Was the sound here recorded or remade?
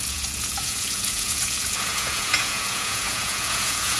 remade